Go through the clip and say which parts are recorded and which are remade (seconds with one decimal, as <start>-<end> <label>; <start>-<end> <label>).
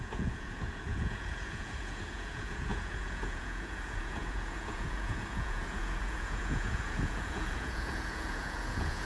0.0-9.0 remade